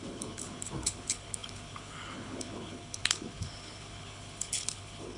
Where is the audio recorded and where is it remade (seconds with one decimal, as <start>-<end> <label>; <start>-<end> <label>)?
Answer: 0.0-5.2 remade